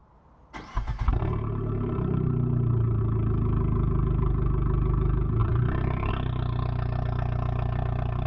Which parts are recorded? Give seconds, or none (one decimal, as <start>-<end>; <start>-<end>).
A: 3.0-5.4; 6.1-8.3